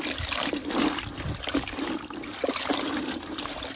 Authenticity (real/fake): fake